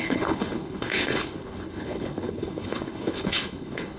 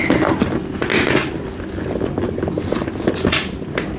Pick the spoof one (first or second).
first